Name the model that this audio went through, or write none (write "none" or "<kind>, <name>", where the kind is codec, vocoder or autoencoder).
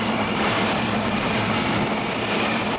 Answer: none